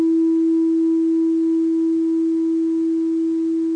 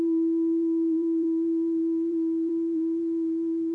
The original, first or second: first